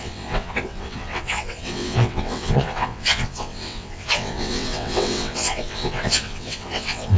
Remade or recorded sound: remade